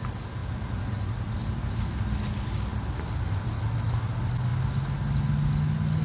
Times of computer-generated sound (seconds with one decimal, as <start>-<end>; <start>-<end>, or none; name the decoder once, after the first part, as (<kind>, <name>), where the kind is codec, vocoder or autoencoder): none

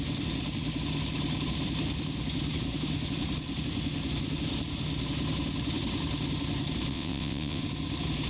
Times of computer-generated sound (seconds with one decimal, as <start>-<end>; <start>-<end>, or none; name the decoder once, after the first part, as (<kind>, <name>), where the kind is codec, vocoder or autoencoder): 6.9-7.6 (vocoder, WaveNeXt)

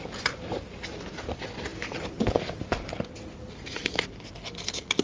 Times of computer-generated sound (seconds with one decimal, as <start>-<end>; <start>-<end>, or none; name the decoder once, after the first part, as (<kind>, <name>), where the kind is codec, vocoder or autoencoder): none

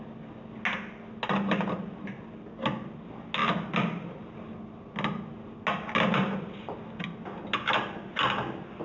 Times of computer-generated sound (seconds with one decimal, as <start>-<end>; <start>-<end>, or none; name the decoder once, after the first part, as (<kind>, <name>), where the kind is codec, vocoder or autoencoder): none

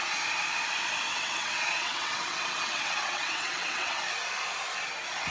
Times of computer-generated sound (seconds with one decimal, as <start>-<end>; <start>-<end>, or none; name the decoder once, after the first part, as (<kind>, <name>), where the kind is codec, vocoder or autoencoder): 1.1-4.0 (vocoder, WaveNeXt)

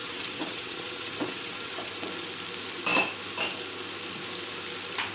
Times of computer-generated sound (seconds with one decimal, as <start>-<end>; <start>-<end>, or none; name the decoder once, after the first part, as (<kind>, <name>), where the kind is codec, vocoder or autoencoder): 0.0-1.9 (vocoder, WaveNeXt)

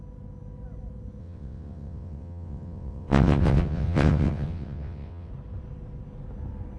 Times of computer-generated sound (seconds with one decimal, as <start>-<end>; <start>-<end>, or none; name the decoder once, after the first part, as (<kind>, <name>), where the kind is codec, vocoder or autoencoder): 1.2-5.3 (vocoder, WaveNeXt)

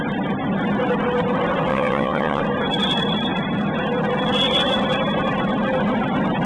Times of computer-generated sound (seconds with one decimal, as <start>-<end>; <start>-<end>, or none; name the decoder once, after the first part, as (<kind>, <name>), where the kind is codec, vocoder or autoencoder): 1.7-2.4 (vocoder, WaveNeXt)